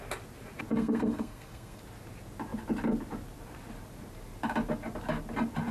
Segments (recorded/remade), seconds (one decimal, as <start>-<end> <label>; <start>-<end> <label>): 0.0-0.7 recorded; 0.7-1.8 remade; 1.8-5.7 recorded